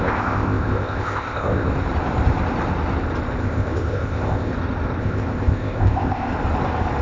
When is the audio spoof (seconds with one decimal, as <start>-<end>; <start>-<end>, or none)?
0.0-1.7; 3.4-4.5; 5.0-6.3